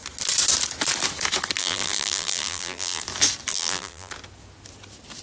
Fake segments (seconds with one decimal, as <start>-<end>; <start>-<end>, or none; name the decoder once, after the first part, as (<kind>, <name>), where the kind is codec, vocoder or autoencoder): 1.6-3.0 (vocoder, BigVGAN v2); 3.5-4.1